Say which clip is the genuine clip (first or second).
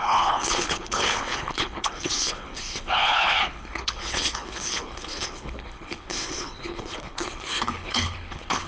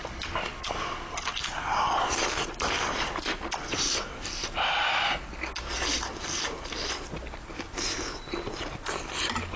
second